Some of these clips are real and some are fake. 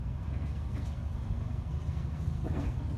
fake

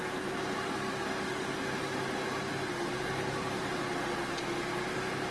real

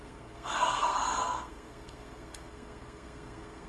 fake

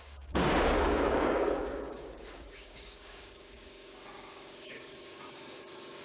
fake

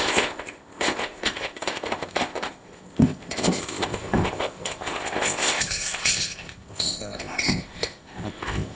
fake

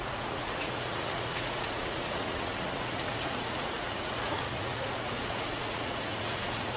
fake